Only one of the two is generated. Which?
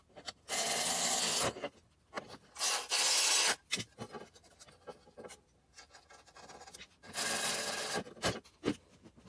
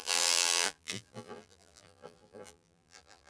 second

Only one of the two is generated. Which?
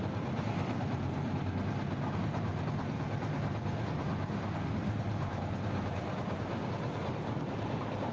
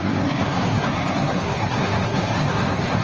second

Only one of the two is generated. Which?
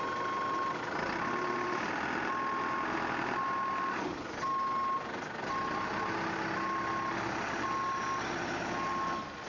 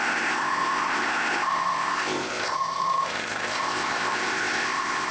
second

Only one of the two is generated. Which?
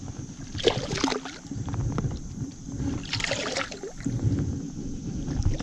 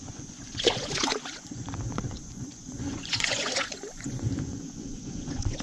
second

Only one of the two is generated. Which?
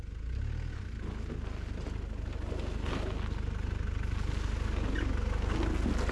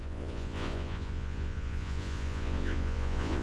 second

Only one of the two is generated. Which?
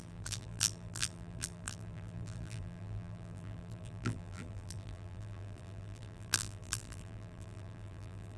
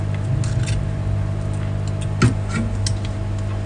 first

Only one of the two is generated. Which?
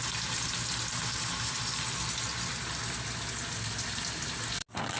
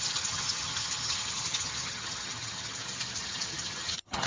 second